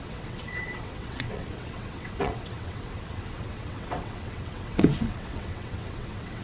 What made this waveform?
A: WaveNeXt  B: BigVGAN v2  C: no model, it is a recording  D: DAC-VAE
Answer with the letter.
A